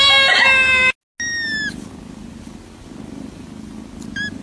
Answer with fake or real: real